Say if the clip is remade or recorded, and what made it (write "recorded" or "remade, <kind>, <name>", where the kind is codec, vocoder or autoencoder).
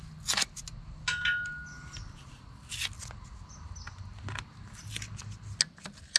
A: recorded